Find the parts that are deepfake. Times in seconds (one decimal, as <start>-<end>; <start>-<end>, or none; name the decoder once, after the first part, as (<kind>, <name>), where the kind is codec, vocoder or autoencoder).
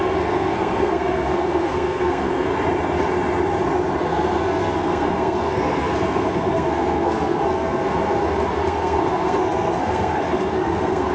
0.0-2.5 (codec, SNAC); 4.0-11.1